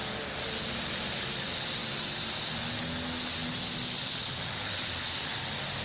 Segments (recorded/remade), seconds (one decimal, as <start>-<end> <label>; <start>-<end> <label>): 0.0-5.8 recorded